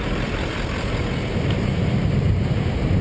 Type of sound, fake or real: real